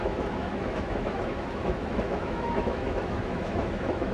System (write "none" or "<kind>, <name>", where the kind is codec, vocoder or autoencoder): autoencoder, DAC-VAE